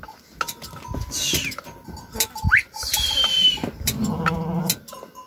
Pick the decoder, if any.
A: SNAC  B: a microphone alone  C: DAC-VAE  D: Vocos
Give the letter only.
B